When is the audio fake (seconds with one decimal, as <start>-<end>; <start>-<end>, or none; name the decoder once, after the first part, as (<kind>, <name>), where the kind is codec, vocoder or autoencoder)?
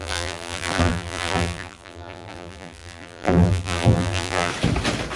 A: 0.0-4.5 (vocoder, BigVGAN v2)